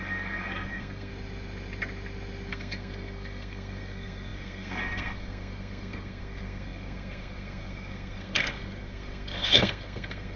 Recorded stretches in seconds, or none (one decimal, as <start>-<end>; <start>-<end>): 1.1-2.5